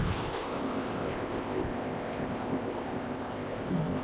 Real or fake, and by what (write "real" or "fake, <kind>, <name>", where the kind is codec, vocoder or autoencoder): fake, codec, ZipCodec